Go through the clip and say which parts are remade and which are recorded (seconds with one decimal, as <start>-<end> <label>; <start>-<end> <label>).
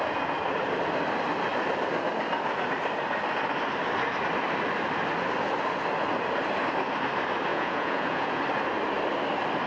0.0-7.5 recorded; 7.5-8.4 remade; 8.4-9.7 recorded